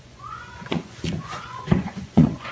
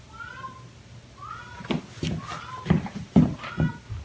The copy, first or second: first